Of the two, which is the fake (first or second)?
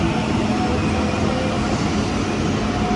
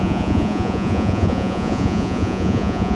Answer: second